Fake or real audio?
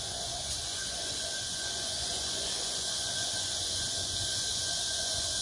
fake